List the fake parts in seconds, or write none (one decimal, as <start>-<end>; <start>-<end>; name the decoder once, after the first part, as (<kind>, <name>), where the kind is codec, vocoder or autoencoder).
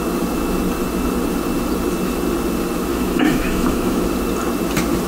2.9-4.0 (autoencoder, DAC-VAE)